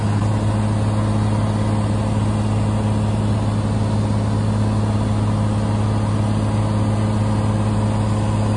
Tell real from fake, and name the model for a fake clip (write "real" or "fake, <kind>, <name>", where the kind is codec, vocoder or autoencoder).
real